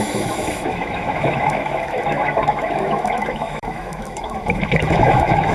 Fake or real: fake